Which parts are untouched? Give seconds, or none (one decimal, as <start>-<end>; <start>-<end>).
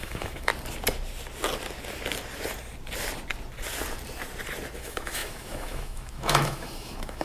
0.5-4.8